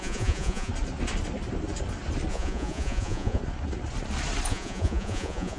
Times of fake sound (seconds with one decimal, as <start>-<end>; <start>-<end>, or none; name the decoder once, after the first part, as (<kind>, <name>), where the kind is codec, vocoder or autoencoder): 0.0-0.7 (vocoder, Vocos); 2.3-3.4; 4.5-5.6